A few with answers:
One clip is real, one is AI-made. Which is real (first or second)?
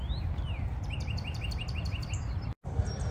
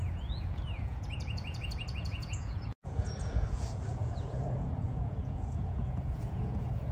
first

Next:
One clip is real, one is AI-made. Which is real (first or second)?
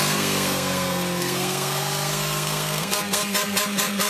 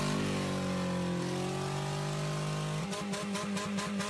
second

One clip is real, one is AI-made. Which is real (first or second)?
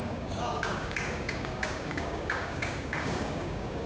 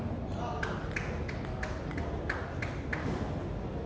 second